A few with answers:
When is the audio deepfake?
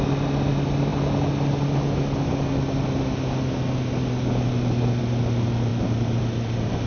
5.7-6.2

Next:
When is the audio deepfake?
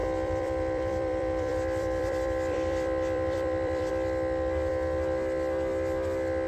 0.0-3.9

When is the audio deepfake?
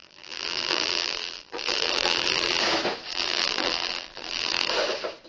0.0-2.6; 3.1-4.7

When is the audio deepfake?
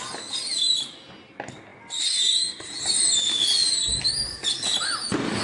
none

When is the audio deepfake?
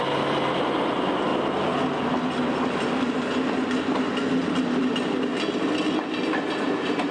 5.3-5.8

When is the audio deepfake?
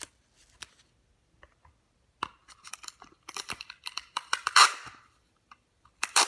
2.4-6.3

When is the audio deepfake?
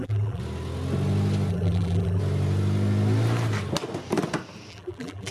0.0-0.4; 1.5-2.2; 4.7-5.3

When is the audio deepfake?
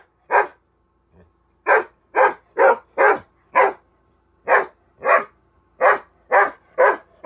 none